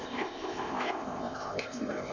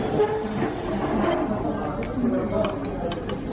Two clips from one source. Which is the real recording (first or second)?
second